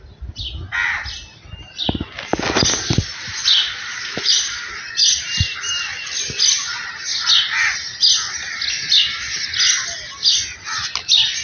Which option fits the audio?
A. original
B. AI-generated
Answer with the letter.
A